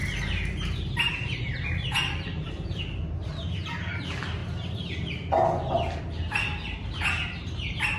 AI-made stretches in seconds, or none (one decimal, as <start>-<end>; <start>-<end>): 0.0-4.0